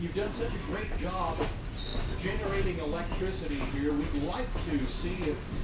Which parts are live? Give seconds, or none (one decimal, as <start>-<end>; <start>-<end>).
0.0-5.6